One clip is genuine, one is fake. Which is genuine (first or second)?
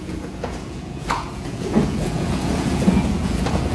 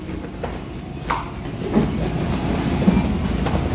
second